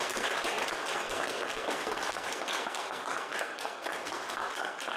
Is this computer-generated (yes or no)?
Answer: yes